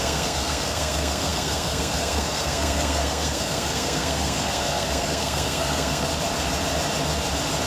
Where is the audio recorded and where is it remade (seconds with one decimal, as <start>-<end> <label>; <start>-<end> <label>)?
0.0-6.1 remade; 6.1-7.7 recorded